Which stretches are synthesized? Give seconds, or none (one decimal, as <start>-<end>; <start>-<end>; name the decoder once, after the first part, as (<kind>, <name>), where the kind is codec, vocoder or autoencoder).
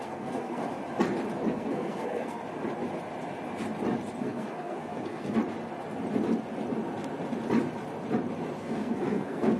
0.0-0.7 (codec, SNAC); 1.5-2.4; 4.2-5.4; 8.6-9.6